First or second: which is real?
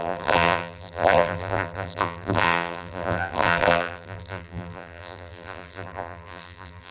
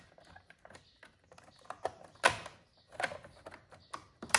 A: second